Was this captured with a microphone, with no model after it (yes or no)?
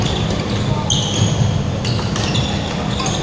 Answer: yes